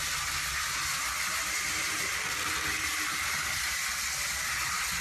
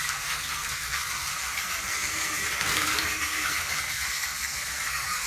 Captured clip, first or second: first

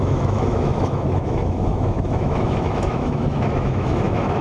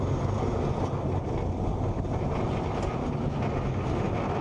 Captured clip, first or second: second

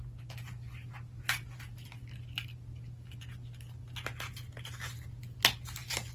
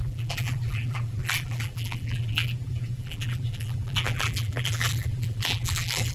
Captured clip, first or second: first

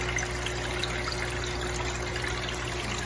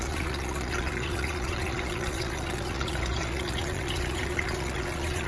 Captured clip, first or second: first